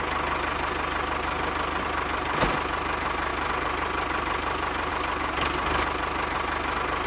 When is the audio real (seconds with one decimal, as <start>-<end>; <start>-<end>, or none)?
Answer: 0.0-7.1